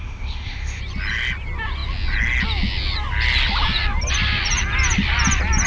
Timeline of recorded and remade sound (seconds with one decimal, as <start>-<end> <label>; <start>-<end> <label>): 0.0-0.8 remade; 0.8-5.7 recorded